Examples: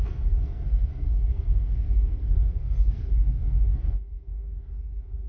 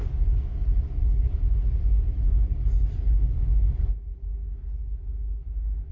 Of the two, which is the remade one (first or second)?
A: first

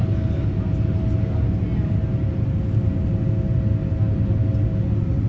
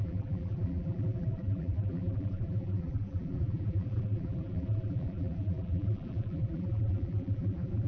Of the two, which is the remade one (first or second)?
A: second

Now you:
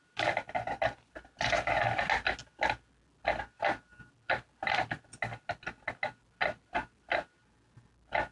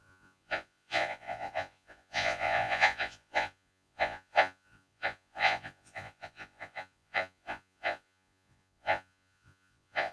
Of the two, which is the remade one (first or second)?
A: second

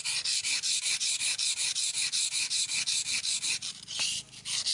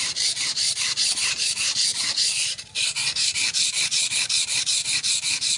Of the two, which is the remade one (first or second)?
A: second